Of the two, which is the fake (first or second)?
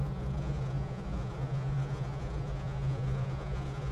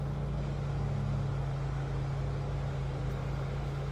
first